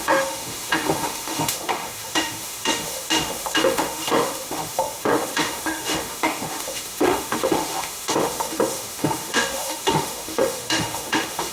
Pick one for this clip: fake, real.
fake